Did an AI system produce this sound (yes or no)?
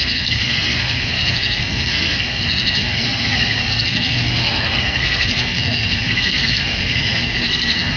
yes